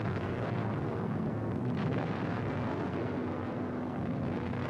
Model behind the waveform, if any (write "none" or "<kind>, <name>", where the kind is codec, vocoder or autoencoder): codec, SNAC